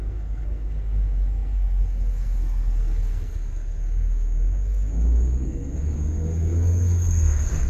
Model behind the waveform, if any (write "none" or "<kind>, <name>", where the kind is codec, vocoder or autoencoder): codec, SNAC